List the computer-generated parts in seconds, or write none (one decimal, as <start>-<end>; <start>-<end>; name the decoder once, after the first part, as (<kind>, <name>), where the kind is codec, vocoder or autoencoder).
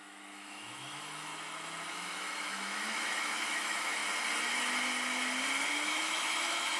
0.0-1.3 (autoencoder, DAC-VAE); 1.9-4.0; 5.7-6.8